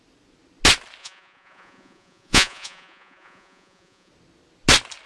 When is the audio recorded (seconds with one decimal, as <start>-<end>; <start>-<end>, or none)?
0.0-1.0; 4.1-5.1